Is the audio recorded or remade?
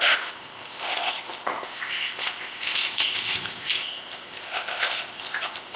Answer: remade